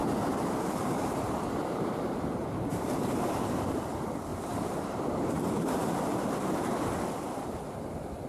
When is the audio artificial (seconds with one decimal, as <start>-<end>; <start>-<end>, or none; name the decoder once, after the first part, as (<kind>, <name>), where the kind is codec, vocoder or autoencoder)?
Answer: 0.0-3.6 (vocoder, BigVGAN v2); 4.3-6.8